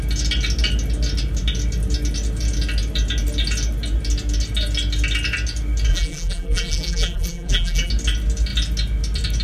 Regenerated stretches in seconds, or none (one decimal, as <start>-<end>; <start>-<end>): 5.9-7.9